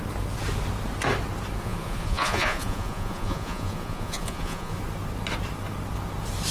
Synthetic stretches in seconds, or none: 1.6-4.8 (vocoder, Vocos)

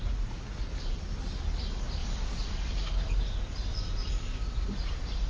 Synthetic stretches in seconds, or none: 2.0-2.7 (vocoder, BigVGAN v2)

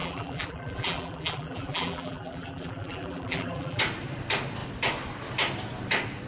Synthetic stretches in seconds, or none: 0.0-3.8 (vocoder, BigVGAN v2)

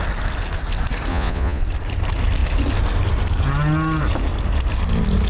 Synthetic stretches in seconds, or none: 1.1-1.6 (vocoder, Vocos)